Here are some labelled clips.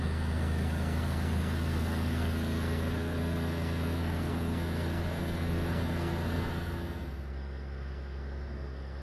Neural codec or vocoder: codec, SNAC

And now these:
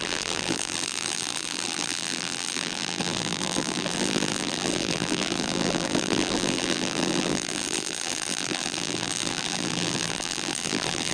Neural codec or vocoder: vocoder, BigVGAN v2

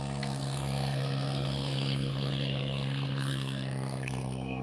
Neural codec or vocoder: codec, SNAC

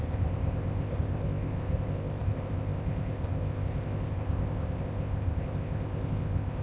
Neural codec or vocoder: codec, ZipCodec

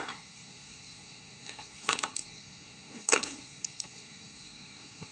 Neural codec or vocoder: codec, SNAC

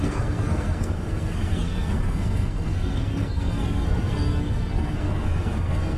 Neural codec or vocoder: codec, SNAC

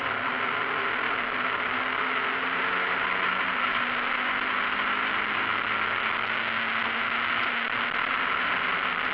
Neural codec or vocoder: none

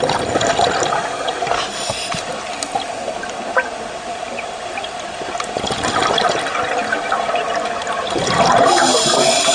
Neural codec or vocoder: none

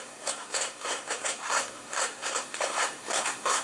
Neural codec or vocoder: codec, SNAC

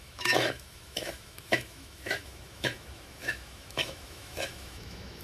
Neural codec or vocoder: autoencoder, DAC-VAE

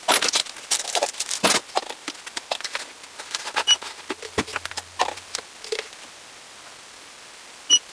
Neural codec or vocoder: none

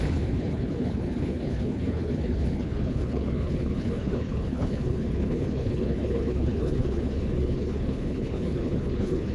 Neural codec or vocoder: codec, HILCodec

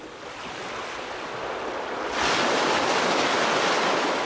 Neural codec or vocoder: none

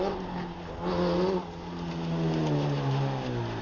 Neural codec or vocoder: none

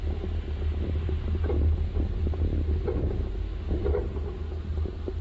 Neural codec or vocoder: none